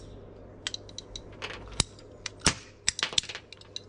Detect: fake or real real